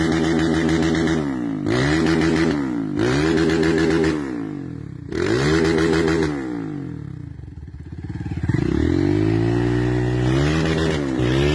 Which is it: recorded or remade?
recorded